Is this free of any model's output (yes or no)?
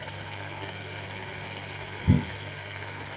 no